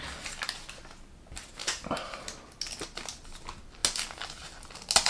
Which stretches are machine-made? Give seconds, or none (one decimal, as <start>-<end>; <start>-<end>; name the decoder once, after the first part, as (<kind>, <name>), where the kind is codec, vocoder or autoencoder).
1.6-2.2 (vocoder, BigVGAN v2)